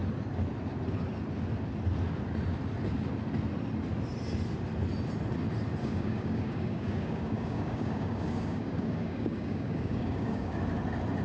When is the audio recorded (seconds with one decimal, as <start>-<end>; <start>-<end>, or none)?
0.0-5.8; 10.6-11.2